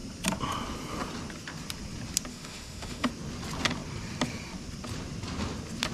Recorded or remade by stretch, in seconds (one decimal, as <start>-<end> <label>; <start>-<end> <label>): 0.0-2.3 recorded; 2.3-3.1 remade; 3.1-5.9 recorded